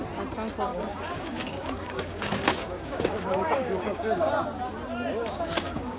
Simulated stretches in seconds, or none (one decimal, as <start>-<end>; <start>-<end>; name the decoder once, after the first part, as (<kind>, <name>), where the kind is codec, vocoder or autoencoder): 0.7-4.3 (codec, DAC); 5.2-6.0